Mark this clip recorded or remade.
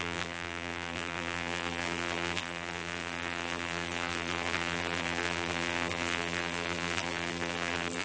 remade